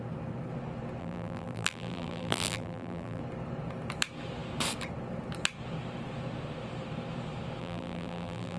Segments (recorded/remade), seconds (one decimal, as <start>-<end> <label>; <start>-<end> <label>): 0.0-1.0 recorded; 1.0-3.2 remade; 3.2-7.6 recorded; 7.6-8.6 remade